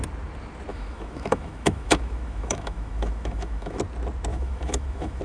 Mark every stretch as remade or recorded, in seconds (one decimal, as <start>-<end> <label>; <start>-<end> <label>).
0.0-0.7 recorded; 0.7-3.8 remade; 3.8-4.3 recorded; 4.3-5.2 remade

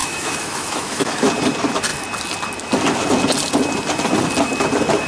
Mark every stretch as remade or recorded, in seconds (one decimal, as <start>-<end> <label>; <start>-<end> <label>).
0.0-1.3 remade; 1.3-5.1 recorded